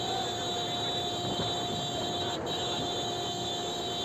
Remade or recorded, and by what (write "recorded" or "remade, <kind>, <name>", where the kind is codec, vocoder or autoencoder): recorded